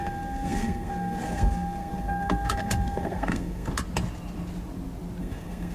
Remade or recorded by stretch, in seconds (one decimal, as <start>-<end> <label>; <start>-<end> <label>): 0.0-3.7 remade; 3.7-5.2 recorded; 5.2-5.7 remade